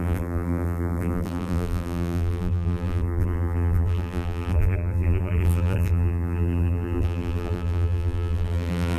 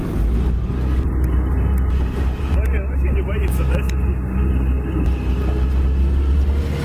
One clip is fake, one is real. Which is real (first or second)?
second